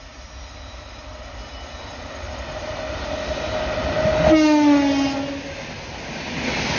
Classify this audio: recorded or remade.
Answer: recorded